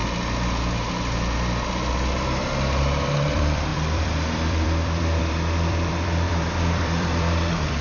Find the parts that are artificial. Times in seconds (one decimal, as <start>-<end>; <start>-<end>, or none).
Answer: 2.8-7.8